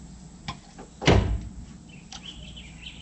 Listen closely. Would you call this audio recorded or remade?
recorded